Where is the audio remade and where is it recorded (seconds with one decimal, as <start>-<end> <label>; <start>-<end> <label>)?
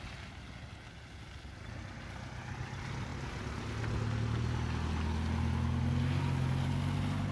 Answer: 0.0-7.3 recorded